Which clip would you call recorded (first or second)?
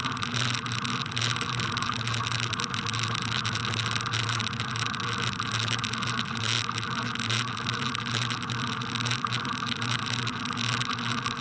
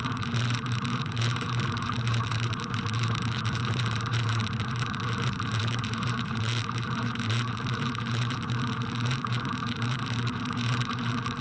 first